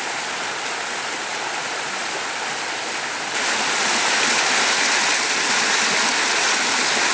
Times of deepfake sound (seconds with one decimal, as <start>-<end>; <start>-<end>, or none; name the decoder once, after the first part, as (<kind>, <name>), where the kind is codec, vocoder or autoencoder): none